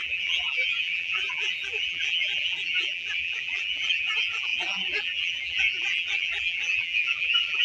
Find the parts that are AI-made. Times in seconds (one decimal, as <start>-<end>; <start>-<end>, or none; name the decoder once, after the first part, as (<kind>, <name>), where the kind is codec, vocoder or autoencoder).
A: 0.0-7.6 (vocoder, BigVGAN v2)